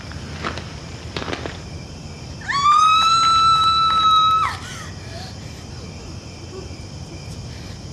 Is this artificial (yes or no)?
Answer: no